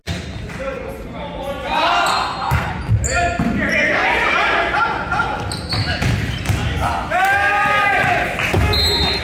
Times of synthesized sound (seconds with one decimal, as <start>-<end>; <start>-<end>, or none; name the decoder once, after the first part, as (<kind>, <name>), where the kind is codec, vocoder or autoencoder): 2.1-2.7 (codec, SNAC)